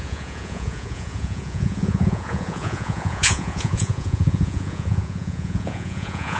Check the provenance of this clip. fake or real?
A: fake